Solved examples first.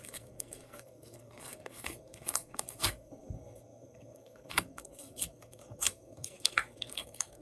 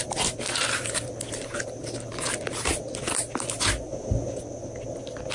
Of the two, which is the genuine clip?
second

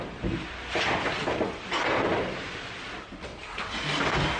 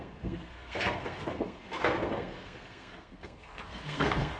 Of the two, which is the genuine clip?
first